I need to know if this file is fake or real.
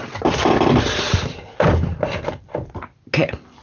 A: real